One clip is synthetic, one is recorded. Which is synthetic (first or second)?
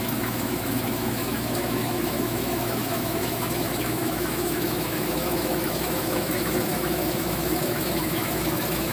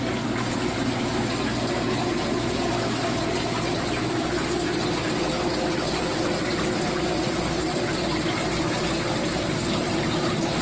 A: first